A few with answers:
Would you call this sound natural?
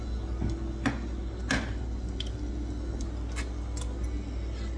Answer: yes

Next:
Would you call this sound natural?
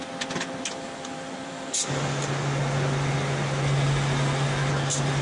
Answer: yes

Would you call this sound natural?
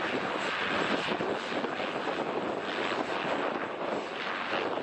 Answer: yes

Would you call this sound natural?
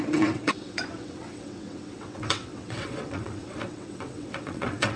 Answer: no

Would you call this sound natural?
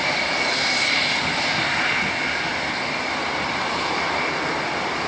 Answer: yes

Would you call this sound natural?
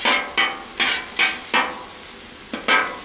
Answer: yes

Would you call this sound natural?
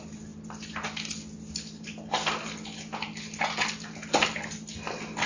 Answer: yes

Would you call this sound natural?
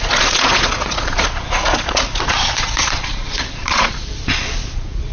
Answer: no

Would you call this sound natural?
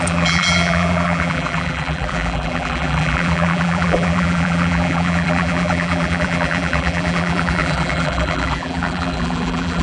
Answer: no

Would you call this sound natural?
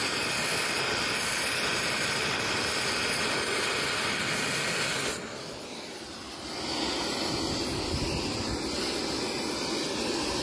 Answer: yes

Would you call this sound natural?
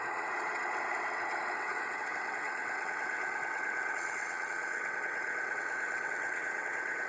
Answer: no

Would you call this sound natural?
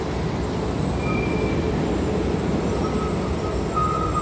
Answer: yes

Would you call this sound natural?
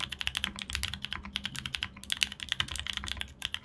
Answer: yes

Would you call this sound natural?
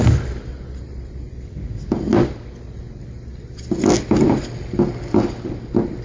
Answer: yes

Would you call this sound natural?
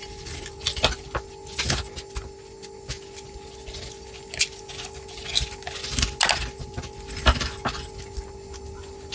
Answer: yes